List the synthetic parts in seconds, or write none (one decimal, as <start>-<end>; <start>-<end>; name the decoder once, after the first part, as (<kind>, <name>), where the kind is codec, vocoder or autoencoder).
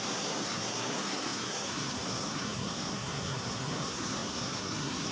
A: 0.0-5.1 (codec, SNAC)